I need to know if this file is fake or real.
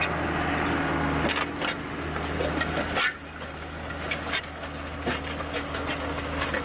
real